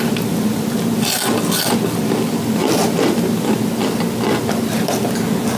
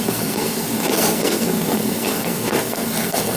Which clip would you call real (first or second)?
first